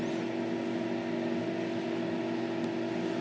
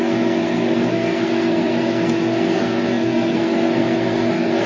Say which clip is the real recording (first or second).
first